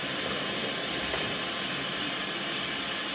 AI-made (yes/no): yes